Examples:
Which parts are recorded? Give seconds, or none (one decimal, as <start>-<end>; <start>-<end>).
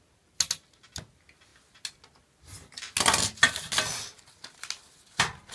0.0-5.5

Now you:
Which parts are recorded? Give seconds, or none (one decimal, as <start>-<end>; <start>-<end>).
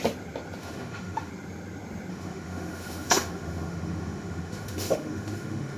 0.0-0.6; 1.3-2.1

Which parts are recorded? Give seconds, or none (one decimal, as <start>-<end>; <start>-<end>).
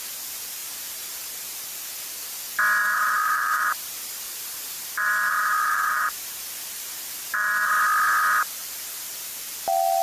0.0-0.6; 1.2-2.8; 7.7-8.6; 9.2-10.0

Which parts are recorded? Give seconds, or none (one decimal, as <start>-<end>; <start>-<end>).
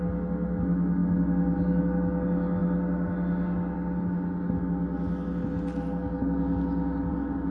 0.0-7.5